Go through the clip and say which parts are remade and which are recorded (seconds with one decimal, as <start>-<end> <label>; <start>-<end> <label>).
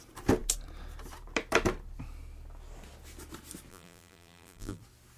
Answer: 0.0-3.7 recorded; 3.7-4.8 remade; 4.8-5.2 recorded